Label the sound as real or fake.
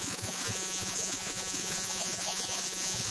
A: fake